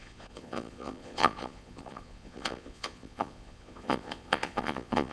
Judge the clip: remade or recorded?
remade